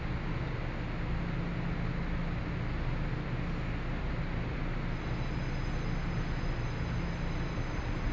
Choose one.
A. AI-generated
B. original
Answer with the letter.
B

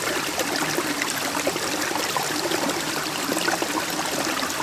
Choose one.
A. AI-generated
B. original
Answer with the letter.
B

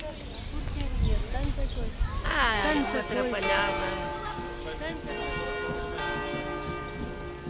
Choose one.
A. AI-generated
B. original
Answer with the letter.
B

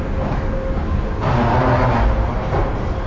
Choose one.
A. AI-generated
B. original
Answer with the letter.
B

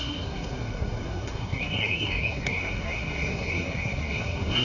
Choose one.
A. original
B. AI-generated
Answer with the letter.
B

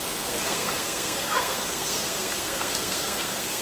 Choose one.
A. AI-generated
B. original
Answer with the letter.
A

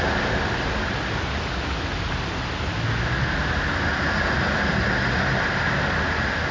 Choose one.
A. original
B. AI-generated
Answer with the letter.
A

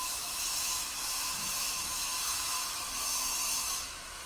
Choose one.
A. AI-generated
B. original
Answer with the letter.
A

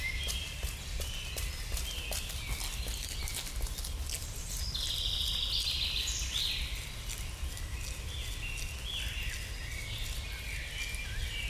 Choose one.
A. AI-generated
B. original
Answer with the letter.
B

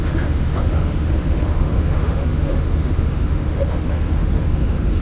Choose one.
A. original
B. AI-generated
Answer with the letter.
B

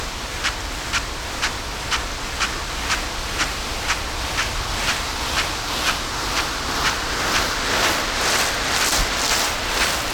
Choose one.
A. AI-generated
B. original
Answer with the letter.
B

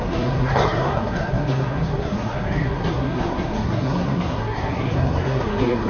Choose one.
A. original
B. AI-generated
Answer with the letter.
B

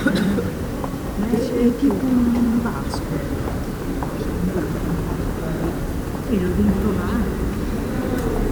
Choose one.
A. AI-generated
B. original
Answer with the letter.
A